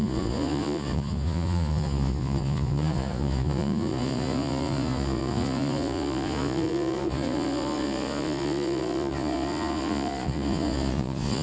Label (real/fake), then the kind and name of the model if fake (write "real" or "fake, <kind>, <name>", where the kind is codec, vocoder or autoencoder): fake, vocoder, Vocos